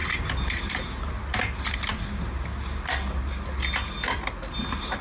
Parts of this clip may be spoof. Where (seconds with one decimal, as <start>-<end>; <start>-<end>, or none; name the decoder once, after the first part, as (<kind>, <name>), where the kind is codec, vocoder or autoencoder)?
none